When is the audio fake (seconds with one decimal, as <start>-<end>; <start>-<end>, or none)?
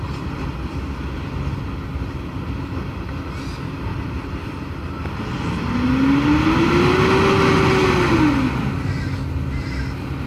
3.9-5.2